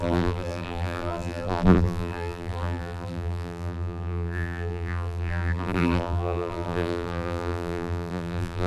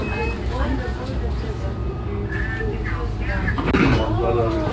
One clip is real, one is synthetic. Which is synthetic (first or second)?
first